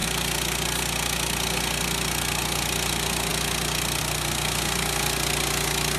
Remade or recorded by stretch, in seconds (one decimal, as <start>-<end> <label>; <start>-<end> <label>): 0.0-6.0 recorded